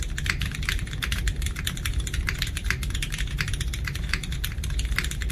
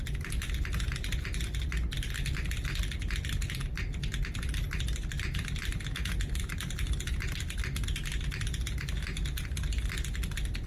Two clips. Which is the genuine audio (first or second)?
second